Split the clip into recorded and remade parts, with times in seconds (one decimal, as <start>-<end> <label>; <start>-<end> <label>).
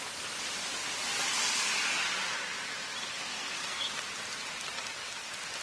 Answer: 0.0-3.3 recorded; 3.3-4.0 remade; 4.0-5.6 recorded